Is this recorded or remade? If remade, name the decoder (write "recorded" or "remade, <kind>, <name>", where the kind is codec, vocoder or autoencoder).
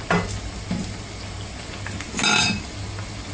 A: recorded